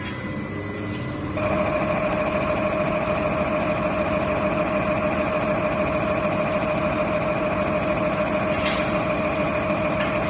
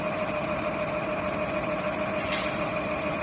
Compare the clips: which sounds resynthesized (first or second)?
second